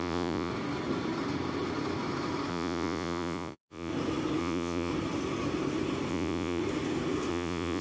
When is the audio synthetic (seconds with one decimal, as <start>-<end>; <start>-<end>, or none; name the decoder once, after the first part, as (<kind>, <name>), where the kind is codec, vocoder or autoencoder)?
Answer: 0.0-0.5 (vocoder, Vocos); 2.5-3.9; 4.4-4.9; 6.1-6.6; 7.3-7.8